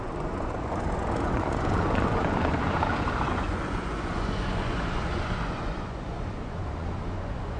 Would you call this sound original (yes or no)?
no